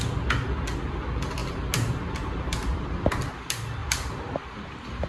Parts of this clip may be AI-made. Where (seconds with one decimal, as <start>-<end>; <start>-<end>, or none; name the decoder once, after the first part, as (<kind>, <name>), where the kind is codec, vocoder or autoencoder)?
3.8-5.1 (vocoder, BigVGAN v2)